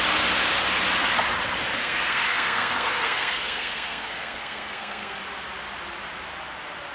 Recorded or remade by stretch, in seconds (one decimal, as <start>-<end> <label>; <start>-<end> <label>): 0.0-1.8 recorded; 1.8-5.2 remade; 5.2-6.9 recorded